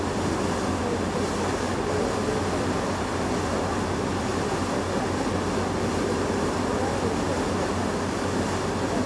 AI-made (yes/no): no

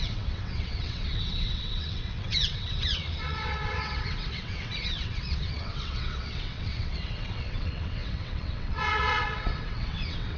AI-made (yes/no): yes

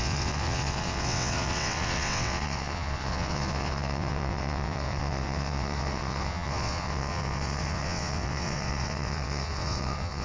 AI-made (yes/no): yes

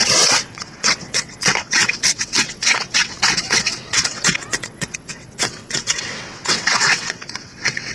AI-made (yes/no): yes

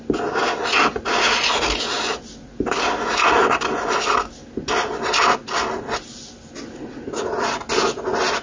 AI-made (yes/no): no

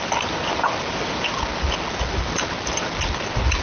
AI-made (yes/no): no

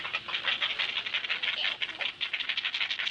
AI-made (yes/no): no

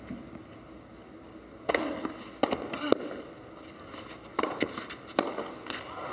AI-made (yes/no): no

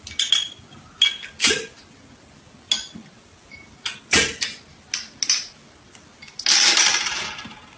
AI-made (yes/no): no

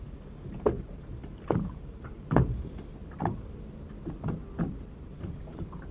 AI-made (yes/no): no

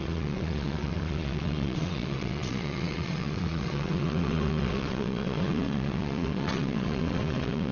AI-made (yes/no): yes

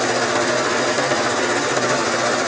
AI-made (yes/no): no